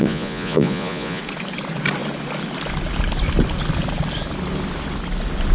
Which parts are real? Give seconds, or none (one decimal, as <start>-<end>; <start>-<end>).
1.2-5.5

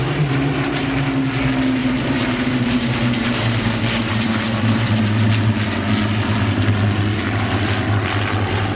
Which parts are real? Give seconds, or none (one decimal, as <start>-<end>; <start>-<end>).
0.9-1.8; 5.3-8.8

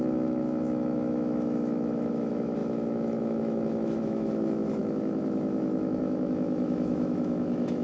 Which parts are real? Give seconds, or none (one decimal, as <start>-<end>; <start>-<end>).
none

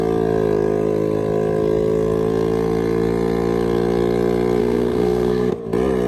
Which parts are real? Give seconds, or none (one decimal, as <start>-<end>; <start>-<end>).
0.0-4.6; 5.5-6.1

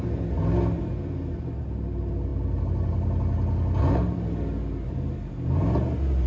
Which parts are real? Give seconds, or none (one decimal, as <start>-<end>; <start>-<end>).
0.0-6.3